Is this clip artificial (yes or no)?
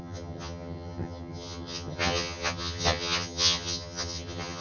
yes